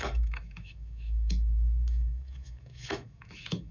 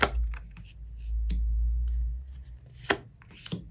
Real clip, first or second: second